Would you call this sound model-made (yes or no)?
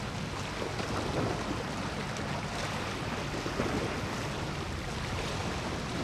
no